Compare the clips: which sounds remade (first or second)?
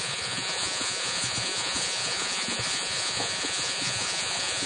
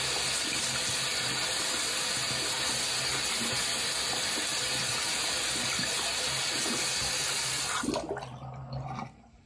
first